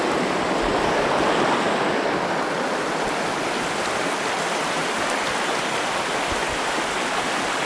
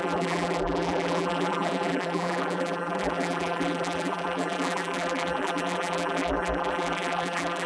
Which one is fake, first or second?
second